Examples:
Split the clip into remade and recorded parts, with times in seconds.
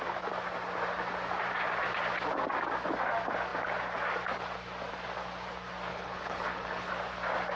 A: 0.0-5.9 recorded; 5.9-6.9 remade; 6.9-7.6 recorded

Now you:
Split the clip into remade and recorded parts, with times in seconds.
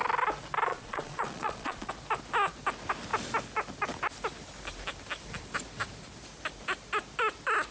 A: 0.0-0.7 recorded; 0.7-1.9 remade; 1.9-7.7 recorded